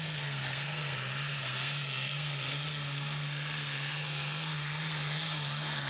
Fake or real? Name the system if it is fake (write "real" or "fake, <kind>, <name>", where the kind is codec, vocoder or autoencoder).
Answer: fake, codec, SNAC